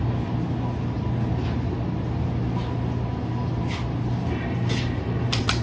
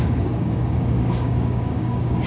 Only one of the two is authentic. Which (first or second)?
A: first